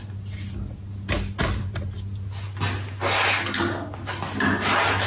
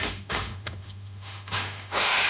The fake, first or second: second